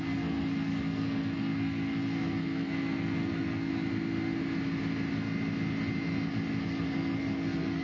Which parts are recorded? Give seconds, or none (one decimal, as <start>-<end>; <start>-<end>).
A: 3.7-6.6